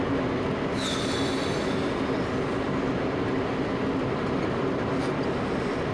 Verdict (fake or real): real